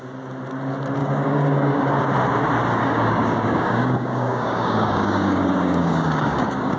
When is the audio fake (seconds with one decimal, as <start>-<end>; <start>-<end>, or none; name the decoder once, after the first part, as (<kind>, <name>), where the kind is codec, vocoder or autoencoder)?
1.0-2.0 (codec, DAC); 2.8-6.8